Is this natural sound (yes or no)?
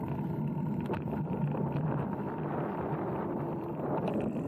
yes